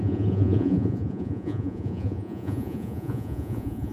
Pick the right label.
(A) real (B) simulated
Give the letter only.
B